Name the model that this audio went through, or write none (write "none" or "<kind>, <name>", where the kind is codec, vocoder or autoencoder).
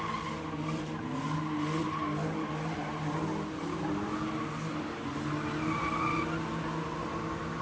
none